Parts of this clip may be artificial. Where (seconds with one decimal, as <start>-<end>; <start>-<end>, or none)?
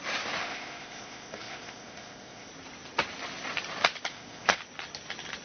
0.4-2.5; 4.1-4.6